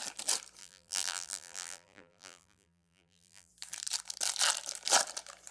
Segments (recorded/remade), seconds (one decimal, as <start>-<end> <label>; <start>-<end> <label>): 0.0-0.6 recorded; 0.6-3.5 remade; 3.5-5.5 recorded